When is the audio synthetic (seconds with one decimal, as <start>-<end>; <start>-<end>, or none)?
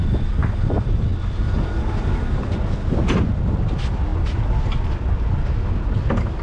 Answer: none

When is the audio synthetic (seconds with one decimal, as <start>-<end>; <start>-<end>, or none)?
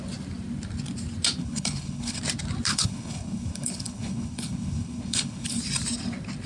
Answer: 1.4-2.2; 2.7-5.6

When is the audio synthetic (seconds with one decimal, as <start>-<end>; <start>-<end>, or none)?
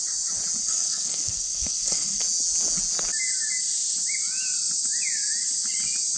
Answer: 0.6-2.2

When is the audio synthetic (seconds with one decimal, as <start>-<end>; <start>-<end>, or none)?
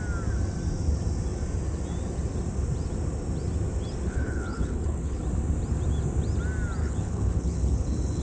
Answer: 4.1-5.2; 6.8-8.2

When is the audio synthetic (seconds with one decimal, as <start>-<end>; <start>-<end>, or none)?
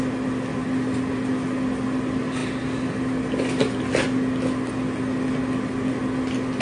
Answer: none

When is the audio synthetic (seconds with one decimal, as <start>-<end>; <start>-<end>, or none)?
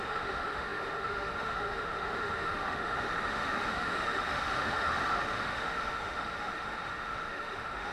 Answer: 0.0-7.9